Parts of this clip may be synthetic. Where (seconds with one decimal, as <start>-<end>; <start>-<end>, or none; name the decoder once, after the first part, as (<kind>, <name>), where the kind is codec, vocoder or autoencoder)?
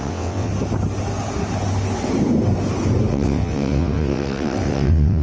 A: 0.0-0.5 (vocoder, WaveNeXt); 3.1-5.2